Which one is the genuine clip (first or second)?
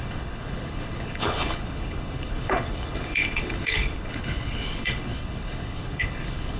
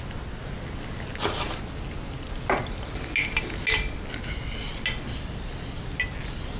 second